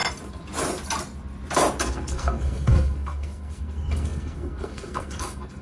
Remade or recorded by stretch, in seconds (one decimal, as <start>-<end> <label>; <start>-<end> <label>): 0.0-1.8 recorded; 1.8-5.6 remade